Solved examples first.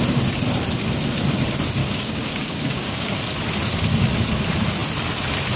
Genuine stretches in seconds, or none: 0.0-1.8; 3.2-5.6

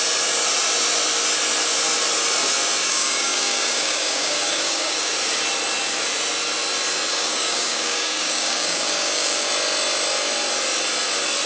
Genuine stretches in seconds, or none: 0.0-2.9; 5.1-7.1; 9.5-11.5

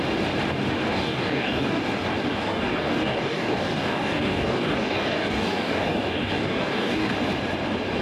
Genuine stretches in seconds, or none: 0.0-0.9; 1.8-2.3; 7.1-8.0

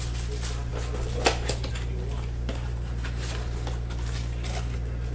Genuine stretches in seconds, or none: 0.0-5.1

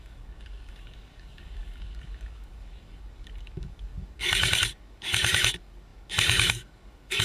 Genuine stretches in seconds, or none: none